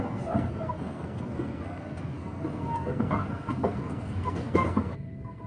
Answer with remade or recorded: remade